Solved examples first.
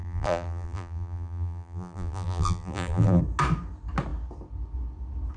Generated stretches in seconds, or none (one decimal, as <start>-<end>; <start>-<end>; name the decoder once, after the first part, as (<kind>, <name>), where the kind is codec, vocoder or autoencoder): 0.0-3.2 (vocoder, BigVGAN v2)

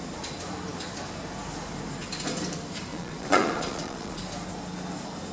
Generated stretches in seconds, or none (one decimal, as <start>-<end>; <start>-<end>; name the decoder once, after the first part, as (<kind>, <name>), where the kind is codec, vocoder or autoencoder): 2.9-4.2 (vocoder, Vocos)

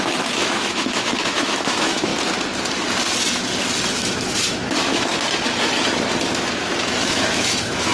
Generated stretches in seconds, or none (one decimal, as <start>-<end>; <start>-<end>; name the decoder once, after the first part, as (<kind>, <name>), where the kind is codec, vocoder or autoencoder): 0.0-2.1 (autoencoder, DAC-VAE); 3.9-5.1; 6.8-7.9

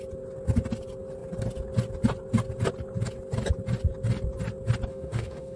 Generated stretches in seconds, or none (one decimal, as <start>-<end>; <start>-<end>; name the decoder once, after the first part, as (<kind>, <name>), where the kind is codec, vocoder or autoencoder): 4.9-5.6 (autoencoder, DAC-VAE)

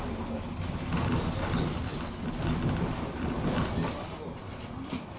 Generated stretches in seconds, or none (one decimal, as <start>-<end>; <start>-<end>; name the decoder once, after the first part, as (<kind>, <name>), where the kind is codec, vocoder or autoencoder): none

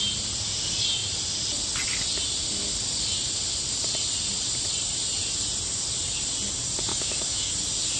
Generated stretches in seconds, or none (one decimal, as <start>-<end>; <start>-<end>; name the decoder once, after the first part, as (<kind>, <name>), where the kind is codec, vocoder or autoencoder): 6.9-7.5 (autoencoder, DAC-VAE)